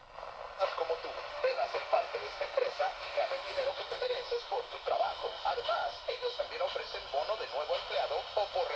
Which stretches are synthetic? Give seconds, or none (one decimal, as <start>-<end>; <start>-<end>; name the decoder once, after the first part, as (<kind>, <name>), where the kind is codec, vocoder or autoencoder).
1.3-6.4 (autoencoder, DAC-VAE)